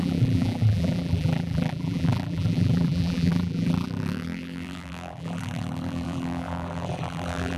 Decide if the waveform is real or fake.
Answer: fake